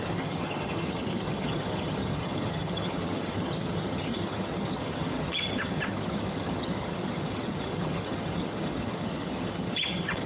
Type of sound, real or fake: fake